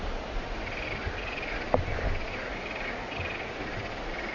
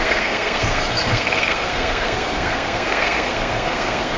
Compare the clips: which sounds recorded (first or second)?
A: first